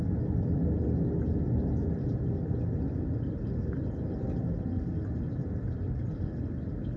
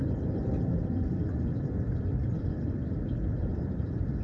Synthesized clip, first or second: second